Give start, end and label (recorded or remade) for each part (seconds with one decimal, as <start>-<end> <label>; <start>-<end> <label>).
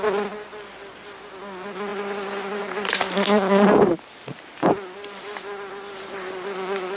0.0-7.0 recorded